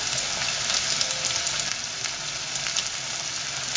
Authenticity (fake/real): real